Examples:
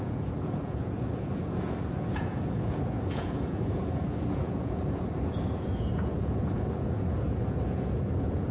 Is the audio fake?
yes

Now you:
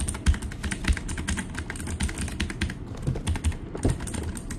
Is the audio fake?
no